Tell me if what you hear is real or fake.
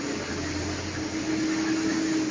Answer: real